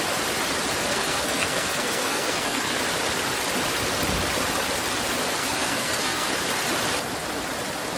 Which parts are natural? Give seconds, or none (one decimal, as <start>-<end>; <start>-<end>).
0.0-0.9; 2.8-5.4; 6.3-8.0